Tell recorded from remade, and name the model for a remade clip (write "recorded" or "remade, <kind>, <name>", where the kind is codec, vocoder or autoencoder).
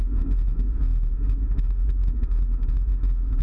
remade, autoencoder, DAC-VAE